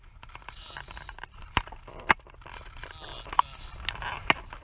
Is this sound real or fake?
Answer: real